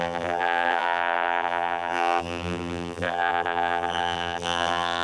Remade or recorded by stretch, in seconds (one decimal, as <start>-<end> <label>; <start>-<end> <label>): 0.0-5.0 remade